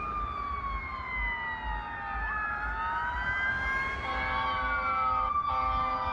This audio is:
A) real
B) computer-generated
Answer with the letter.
A